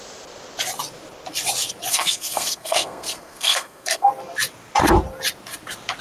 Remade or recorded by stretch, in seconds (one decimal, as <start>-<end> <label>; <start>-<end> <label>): 0.0-1.9 recorded; 1.9-4.1 remade; 4.1-6.0 recorded